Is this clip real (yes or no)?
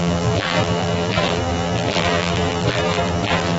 no